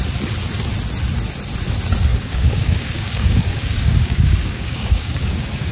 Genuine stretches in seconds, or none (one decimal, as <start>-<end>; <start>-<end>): 0.0-2.1